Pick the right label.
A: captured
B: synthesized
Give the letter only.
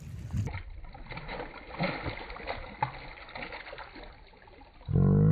A